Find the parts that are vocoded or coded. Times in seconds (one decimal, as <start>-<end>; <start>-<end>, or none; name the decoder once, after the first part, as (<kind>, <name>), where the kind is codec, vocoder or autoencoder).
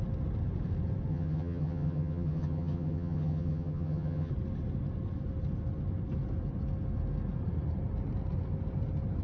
1.1-4.3 (vocoder, HiFi-GAN)